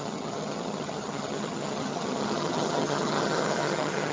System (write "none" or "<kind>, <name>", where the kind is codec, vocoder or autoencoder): vocoder, HiFi-GAN